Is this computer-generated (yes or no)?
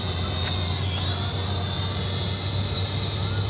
no